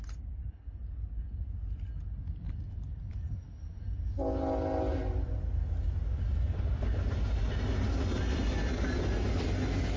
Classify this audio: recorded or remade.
recorded